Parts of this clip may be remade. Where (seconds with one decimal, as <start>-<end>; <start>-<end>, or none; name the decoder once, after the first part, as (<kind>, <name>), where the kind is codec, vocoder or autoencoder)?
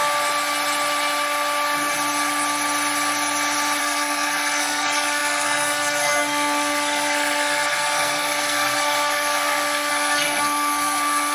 3.8-11.3 (codec, SNAC)